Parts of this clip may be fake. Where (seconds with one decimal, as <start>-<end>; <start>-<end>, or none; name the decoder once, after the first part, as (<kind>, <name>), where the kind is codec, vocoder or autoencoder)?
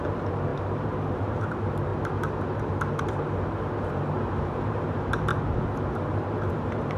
0.0-1.9 (vocoder, BigVGAN v2); 3.0-5.3; 6.5-7.0